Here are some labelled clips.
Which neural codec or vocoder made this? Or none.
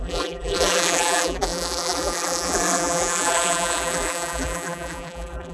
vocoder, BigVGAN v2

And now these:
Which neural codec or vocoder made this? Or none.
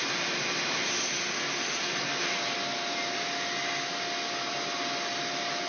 none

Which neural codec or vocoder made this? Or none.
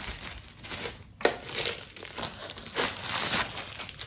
none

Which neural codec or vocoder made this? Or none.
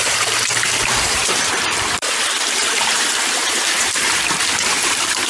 vocoder, BigVGAN v2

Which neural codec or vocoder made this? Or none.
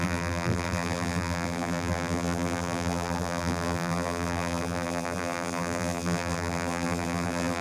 vocoder, BigVGAN v2